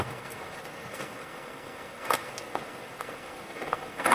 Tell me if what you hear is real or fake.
fake